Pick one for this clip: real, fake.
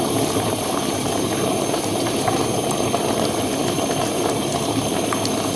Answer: fake